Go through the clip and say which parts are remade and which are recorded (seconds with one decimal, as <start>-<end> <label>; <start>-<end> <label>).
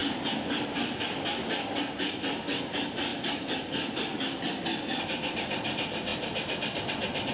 0.0-7.3 recorded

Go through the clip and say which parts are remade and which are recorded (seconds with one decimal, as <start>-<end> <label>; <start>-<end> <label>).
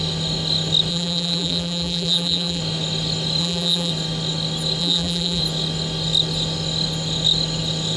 0.0-0.9 recorded; 0.9-2.6 remade; 2.6-3.4 recorded; 3.4-3.9 remade; 3.9-4.8 recorded; 4.8-5.4 remade; 5.4-8.0 recorded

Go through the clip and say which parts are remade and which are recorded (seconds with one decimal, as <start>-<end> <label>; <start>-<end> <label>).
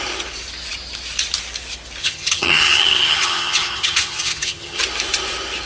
0.0-2.0 recorded; 2.0-4.8 remade; 4.8-5.7 recorded